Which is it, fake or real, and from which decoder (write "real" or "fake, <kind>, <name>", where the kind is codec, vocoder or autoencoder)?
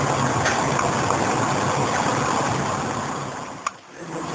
real